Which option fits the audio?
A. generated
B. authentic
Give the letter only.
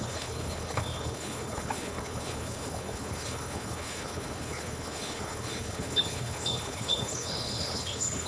A